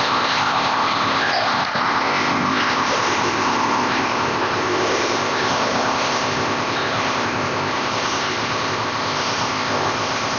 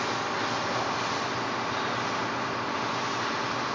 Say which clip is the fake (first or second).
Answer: first